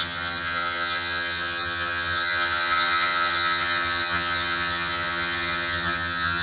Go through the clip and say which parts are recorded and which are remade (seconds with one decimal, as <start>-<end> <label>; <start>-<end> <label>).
0.0-6.4 remade